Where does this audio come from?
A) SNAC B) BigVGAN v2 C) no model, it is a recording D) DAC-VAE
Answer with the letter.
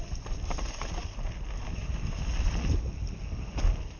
B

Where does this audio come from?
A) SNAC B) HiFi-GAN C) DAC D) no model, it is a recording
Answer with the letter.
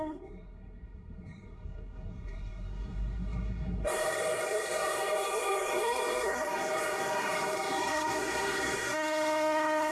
A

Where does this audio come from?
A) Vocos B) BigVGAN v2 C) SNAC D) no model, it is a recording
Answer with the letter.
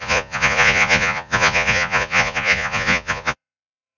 A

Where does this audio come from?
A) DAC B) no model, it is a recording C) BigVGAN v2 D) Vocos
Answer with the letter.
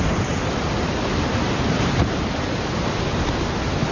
B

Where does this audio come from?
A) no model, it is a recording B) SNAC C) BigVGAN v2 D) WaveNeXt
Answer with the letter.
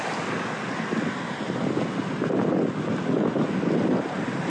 A